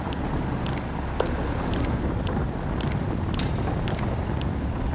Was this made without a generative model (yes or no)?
yes